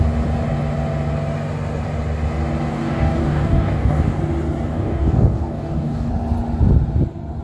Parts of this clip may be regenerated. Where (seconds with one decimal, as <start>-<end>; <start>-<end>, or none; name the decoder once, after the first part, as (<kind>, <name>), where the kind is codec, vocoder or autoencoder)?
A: 2.7-4.2 (codec, DAC); 4.7-6.1